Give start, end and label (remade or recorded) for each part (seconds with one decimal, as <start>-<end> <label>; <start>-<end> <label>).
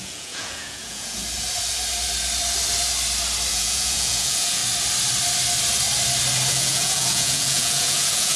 0.0-1.2 remade; 1.2-3.5 recorded; 3.5-4.6 remade; 4.6-6.5 recorded; 6.5-8.4 remade